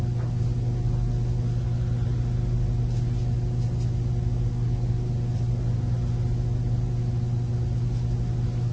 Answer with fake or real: real